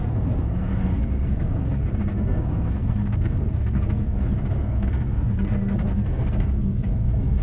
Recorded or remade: remade